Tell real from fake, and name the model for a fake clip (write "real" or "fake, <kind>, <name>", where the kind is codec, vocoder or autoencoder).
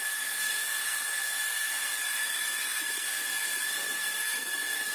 fake, codec, SNAC